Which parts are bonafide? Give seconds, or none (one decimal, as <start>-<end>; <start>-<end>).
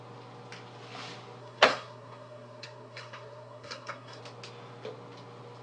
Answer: 0.0-1.4; 4.2-5.6